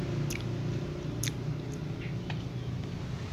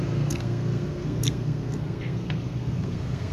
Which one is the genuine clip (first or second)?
first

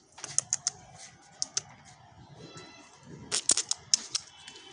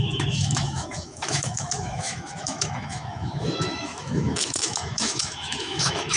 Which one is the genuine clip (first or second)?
first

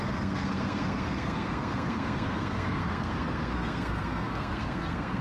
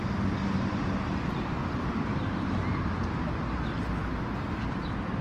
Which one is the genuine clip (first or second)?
second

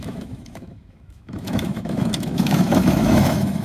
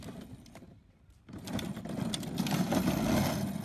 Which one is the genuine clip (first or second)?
second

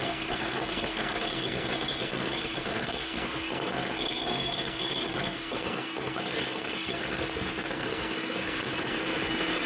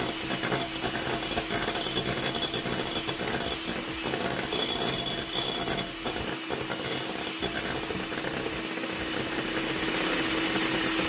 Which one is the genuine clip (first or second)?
second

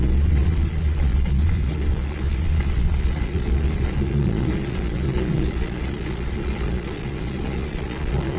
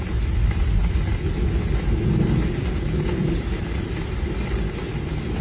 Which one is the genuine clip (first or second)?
second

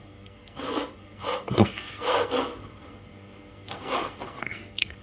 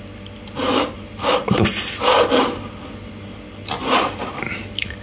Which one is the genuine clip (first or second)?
second